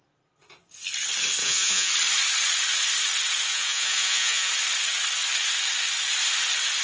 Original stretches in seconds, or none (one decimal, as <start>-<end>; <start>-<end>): 0.0-1.4; 1.9-3.5; 4.5-6.8